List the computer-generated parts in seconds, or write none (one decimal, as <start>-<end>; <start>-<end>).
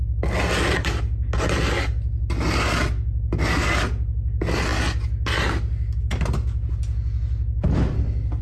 none